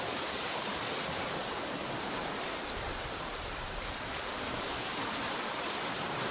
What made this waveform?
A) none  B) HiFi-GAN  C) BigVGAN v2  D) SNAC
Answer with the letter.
C